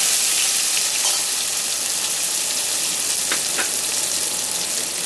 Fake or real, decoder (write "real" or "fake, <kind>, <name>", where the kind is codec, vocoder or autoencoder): real